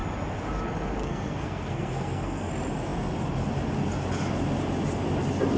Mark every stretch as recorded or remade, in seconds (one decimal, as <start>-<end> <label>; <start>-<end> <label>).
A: 0.0-1.0 recorded; 1.0-2.5 remade; 2.5-5.6 recorded